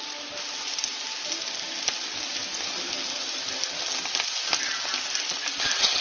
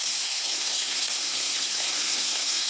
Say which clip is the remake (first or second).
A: second